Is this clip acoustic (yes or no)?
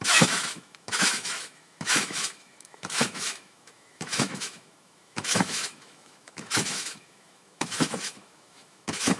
no